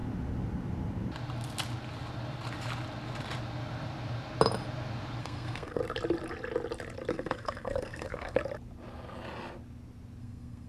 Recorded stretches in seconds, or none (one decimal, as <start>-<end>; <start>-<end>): 0.0-5.2; 5.8-7.1; 8.4-10.2